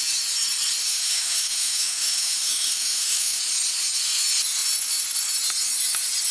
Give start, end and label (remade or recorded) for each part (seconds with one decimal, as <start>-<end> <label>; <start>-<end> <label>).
0.0-0.8 recorded; 0.8-3.4 remade; 3.4-6.3 recorded